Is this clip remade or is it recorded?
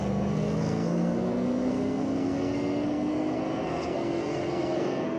remade